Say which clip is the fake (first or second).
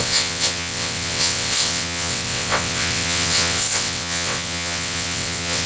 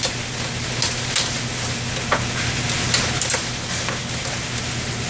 first